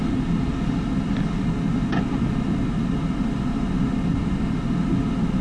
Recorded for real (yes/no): yes